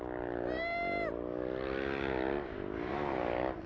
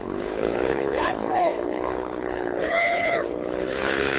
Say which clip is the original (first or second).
first